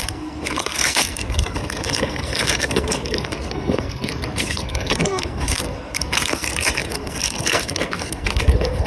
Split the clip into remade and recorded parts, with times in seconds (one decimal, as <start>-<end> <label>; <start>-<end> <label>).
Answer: 0.0-8.9 remade